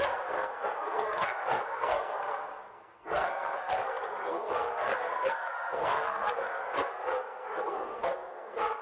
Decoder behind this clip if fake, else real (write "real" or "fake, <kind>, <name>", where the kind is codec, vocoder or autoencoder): fake, codec, SNAC